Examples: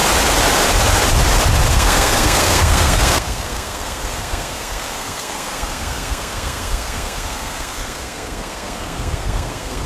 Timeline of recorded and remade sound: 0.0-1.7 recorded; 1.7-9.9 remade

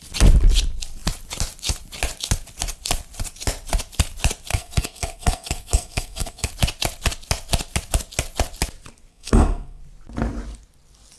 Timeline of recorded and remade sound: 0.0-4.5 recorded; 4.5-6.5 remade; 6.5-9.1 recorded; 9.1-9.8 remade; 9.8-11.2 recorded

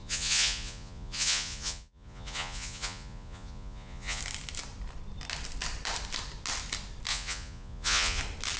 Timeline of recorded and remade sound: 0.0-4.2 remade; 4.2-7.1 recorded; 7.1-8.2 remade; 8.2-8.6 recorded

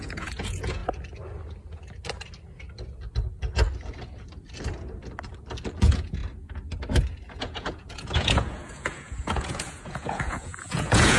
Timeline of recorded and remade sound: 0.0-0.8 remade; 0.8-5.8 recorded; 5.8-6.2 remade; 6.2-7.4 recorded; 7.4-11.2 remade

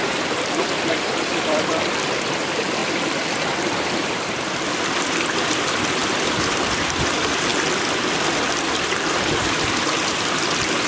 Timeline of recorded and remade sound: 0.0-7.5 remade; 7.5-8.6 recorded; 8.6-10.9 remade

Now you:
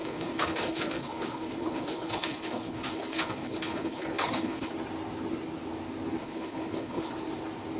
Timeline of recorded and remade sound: 0.0-4.7 remade; 4.7-6.2 recorded; 6.2-7.1 remade; 7.1-7.8 recorded